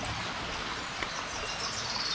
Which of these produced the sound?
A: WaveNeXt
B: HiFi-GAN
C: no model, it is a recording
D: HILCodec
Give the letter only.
C